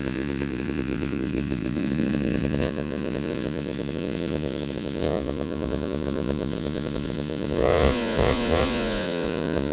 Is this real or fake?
fake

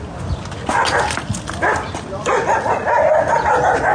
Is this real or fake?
real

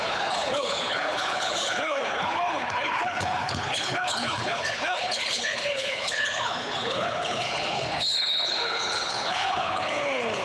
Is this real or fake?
fake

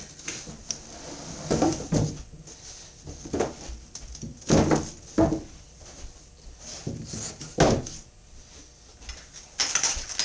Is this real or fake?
real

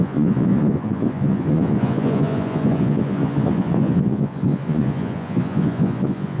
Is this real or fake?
fake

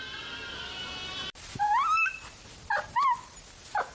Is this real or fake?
real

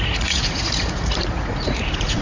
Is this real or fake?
fake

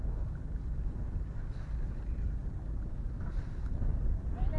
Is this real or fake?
real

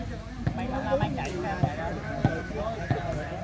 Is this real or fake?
real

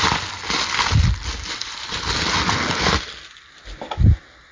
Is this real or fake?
real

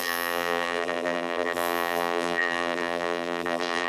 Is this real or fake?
fake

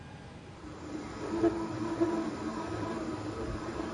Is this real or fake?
fake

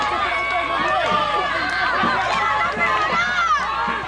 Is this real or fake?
real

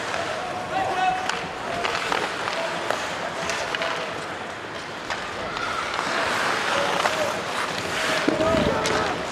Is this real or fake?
real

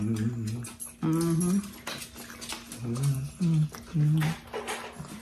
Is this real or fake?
real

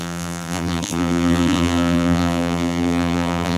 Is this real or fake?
fake